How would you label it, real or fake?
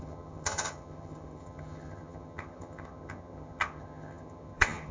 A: fake